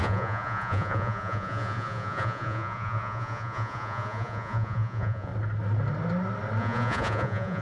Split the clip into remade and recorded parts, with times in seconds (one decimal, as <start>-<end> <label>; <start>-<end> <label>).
0.0-5.3 remade; 5.3-6.6 recorded; 6.6-7.6 remade